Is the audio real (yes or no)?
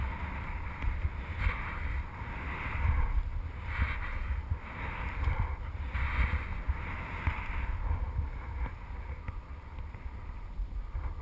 yes